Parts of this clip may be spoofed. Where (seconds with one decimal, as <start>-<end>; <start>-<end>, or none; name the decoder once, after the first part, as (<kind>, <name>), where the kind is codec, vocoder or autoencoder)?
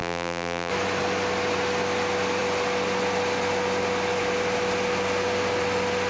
0.0-0.7 (vocoder, BigVGAN v2)